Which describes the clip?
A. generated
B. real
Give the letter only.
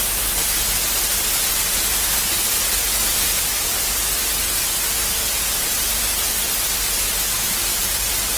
B